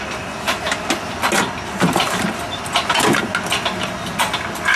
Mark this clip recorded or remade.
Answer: recorded